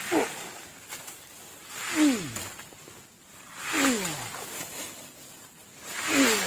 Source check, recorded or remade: recorded